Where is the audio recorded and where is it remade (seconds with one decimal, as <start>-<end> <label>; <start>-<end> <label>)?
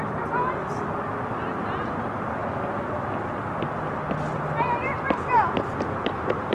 0.0-6.5 recorded